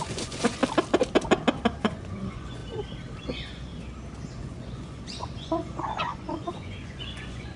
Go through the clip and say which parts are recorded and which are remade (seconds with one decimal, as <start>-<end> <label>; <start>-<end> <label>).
0.0-0.6 remade; 0.6-1.8 recorded; 1.8-2.6 remade; 2.6-3.2 recorded; 3.2-3.7 remade; 3.7-4.4 recorded; 4.4-7.6 remade